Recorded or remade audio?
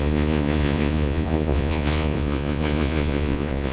remade